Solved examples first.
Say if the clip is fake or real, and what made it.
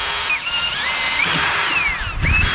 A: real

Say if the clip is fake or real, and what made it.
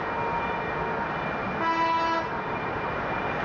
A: real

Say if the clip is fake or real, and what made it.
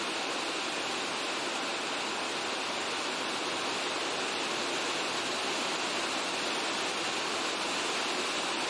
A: real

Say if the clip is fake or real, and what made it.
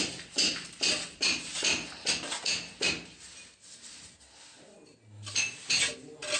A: real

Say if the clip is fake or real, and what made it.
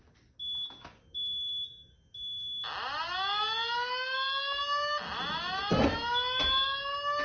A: real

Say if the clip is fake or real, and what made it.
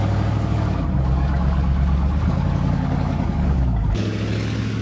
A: fake, codec, DAC